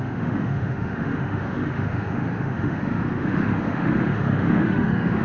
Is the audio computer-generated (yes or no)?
yes